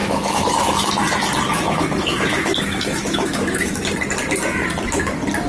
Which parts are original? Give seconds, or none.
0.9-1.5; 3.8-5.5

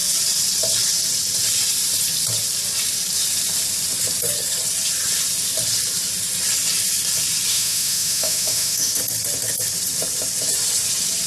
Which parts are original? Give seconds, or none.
0.0-7.5; 9.0-11.3

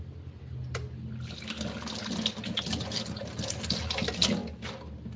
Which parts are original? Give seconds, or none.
0.0-5.2

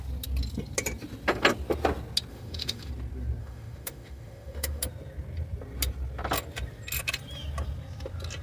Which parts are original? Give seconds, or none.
0.0-2.3; 2.9-3.4; 4.8-8.4

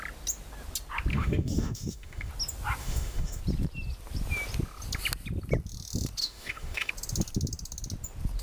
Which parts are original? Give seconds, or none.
0.0-1.1; 2.3-2.8; 3.4-6.2; 6.9-8.4

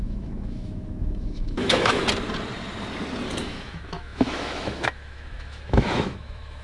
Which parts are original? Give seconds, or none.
2.0-3.4